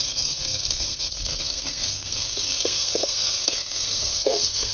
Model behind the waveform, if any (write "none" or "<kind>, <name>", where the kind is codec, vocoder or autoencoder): codec, SNAC